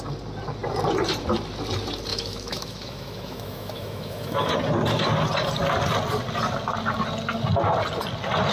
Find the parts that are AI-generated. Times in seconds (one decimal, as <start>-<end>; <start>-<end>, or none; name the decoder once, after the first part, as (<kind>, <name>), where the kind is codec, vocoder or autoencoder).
2.1-4.5 (autoencoder, DAC-VAE)